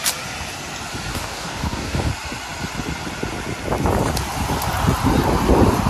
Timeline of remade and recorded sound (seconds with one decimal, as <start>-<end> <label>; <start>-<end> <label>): 0.0-1.1 recorded; 1.1-2.1 remade; 2.1-5.9 recorded